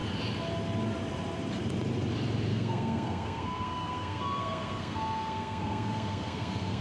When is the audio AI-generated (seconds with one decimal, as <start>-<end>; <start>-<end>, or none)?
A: 2.5-6.8